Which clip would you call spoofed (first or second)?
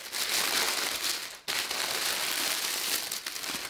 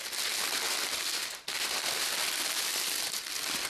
second